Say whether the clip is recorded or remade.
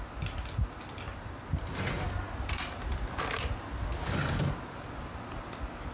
recorded